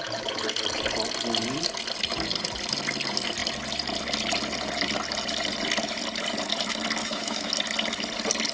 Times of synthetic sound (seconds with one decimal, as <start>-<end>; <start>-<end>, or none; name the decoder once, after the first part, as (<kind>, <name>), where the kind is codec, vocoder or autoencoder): 7.0-7.5 (autoencoder, DAC-VAE)